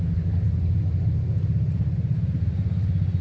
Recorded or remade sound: recorded